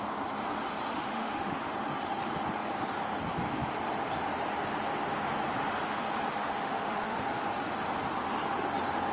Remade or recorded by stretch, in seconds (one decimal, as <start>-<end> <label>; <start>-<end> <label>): 0.0-0.9 recorded; 0.9-1.7 remade; 1.7-6.4 recorded; 6.4-7.4 remade; 7.4-9.1 recorded